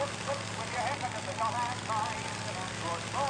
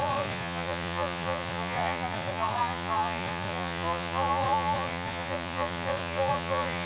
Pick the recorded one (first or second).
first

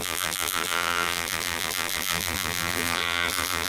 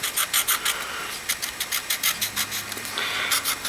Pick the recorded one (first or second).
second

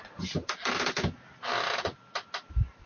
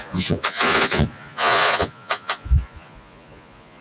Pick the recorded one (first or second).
first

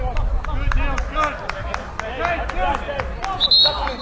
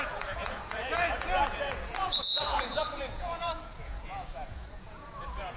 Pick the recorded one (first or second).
first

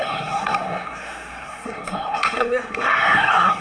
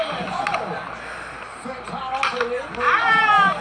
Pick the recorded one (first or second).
second